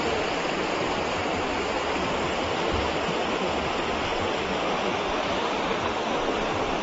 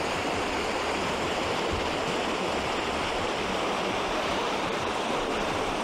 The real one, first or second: first